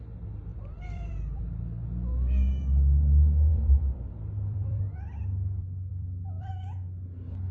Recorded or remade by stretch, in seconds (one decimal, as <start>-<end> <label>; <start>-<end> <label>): 0.0-0.5 recorded; 0.5-1.4 remade; 1.4-3.5 recorded; 3.5-4.8 remade; 4.8-5.9 recorded; 5.9-6.5 remade; 6.5-7.5 recorded